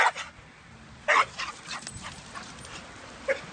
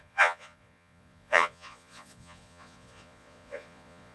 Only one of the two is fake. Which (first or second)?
second